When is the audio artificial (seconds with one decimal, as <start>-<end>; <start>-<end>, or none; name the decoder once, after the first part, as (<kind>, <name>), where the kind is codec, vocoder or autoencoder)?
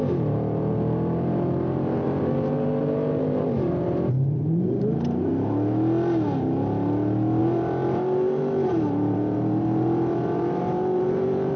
0.0-5.3 (vocoder, BigVGAN v2); 7.4-11.6